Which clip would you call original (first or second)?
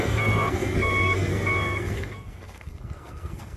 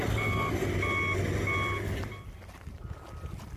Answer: second